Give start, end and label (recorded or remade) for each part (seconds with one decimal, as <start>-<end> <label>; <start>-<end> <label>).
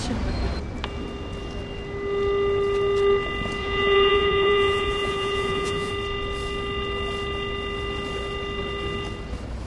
0.0-3.6 recorded; 3.6-5.9 remade; 5.9-9.7 recorded